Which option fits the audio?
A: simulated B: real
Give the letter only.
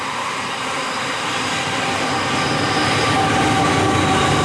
B